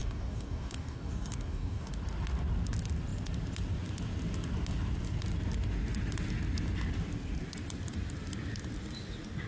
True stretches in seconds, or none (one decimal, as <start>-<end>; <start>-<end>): 1.9-9.5